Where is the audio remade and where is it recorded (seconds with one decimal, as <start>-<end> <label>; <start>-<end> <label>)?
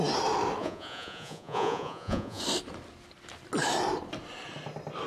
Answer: 0.0-0.6 recorded; 0.6-2.4 remade; 2.4-5.1 recorded